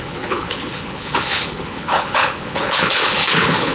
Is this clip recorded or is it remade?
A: remade